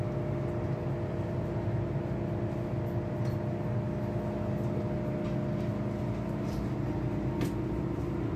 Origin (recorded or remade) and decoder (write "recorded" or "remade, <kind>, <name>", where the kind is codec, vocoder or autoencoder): recorded